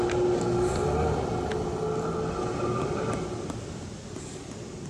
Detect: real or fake real